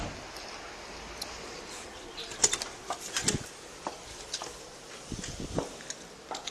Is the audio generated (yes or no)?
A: no